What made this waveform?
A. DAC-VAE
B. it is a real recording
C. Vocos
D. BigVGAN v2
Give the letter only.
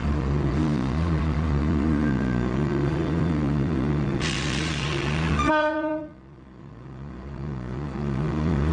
C